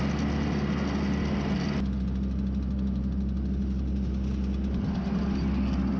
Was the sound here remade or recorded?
recorded